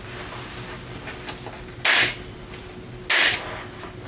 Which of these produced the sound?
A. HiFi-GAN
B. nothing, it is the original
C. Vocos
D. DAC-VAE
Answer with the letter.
B